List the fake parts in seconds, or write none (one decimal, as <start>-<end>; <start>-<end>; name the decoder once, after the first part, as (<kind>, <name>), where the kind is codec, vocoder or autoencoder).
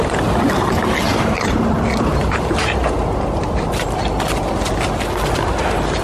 1.1-4.0 (vocoder, BigVGAN v2)